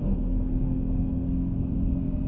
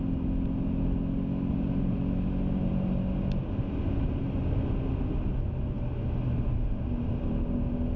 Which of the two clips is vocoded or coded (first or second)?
first